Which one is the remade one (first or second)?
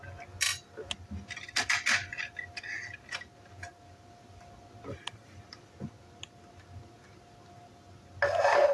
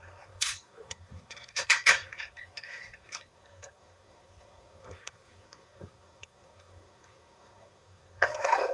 second